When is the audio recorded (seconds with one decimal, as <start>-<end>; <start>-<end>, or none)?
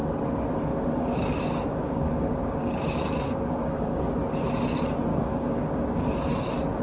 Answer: 0.0-0.7; 4.0-5.1; 6.3-6.8